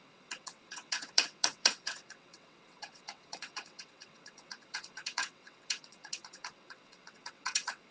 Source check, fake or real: fake